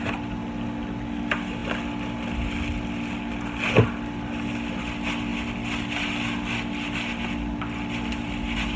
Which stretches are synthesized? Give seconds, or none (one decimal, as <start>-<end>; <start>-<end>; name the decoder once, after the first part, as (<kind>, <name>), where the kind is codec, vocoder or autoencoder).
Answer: none

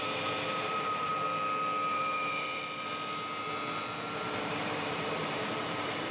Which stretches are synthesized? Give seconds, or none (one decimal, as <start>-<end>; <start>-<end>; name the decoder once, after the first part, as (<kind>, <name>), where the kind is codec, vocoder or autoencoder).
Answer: 0.0-1.1 (vocoder, BigVGAN v2); 1.9-2.6; 4.2-6.1

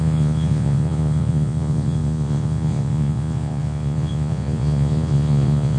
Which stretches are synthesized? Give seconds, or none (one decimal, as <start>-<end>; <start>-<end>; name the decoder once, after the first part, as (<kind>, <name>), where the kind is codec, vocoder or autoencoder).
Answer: 0.0-5.8 (vocoder, Vocos)

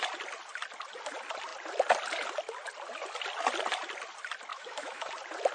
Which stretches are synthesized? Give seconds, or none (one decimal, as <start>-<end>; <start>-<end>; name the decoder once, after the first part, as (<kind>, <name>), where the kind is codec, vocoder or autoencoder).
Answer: 4.5-5.1 (autoencoder, DAC-VAE)

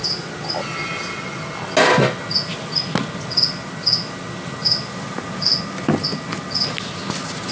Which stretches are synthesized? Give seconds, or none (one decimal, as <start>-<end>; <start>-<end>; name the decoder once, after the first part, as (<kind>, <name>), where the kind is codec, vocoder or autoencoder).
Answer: none

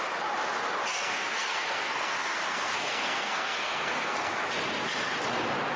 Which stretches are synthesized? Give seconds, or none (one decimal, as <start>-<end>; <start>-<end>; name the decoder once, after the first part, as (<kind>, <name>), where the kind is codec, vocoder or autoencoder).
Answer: 0.9-4.4 (codec, SNAC)

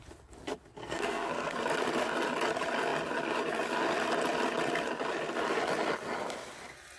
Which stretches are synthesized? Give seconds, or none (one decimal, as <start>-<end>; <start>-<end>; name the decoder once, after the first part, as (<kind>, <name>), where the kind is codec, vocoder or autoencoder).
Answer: 0.8-1.6 (codec, SNAC)